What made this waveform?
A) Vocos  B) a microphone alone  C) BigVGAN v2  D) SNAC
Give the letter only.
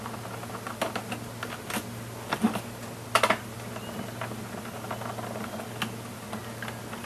B